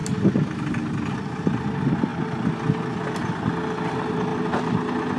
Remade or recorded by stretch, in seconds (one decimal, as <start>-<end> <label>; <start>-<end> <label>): 0.0-2.1 recorded; 2.1-2.8 remade; 2.8-4.3 recorded; 4.3-5.2 remade